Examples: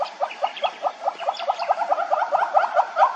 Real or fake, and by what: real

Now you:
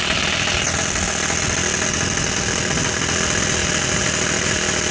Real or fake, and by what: real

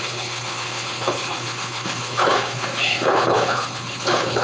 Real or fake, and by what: fake, codec, HILCodec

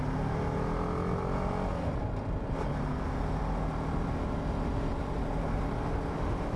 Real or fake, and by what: real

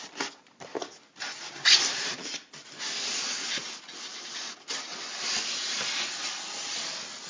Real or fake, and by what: real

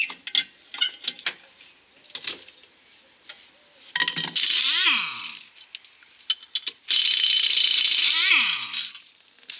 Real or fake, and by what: real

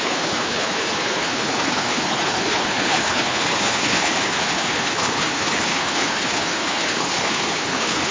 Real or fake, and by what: fake, codec, HILCodec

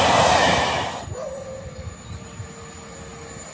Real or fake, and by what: real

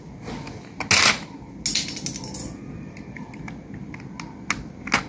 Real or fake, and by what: real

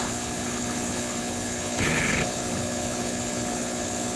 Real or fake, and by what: fake, codec, HILCodec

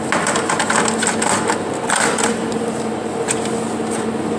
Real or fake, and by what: real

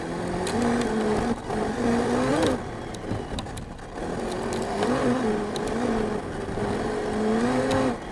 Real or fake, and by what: real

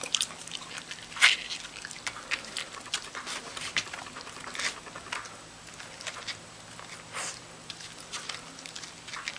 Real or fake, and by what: real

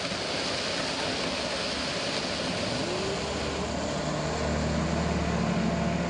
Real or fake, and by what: real